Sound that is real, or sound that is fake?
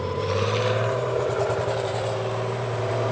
fake